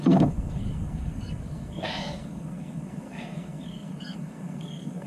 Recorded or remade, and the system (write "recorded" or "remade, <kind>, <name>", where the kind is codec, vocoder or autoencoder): remade, codec, SNAC